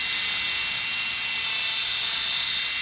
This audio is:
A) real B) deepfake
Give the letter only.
A